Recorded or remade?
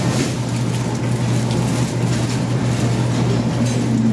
recorded